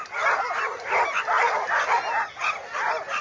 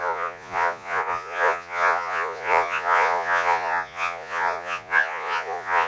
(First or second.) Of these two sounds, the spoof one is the second